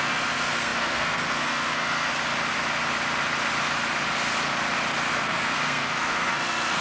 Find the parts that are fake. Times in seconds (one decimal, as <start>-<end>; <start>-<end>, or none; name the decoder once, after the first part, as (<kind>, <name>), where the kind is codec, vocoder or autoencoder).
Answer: 0.0-2.1 (codec, SNAC); 5.1-6.8